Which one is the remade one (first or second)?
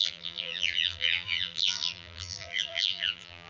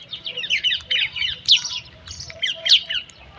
first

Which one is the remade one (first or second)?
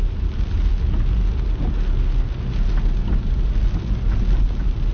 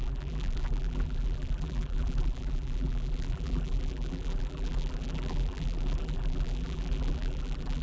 second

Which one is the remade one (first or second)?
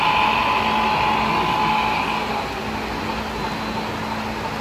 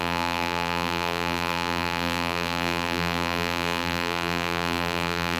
second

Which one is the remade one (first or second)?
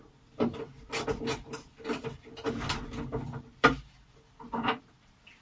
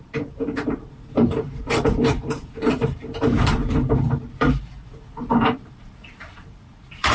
second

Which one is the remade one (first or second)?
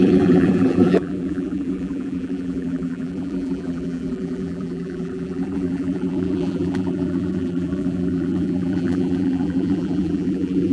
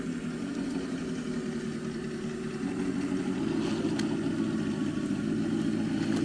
first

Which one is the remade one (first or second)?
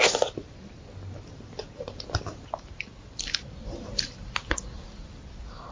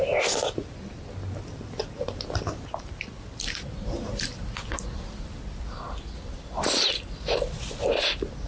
first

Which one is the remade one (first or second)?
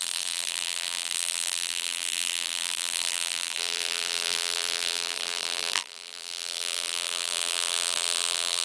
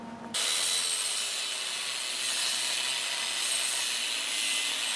first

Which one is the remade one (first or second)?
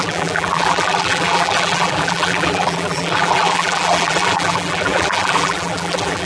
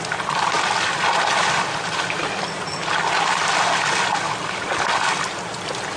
first